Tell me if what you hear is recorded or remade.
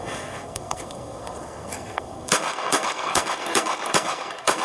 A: remade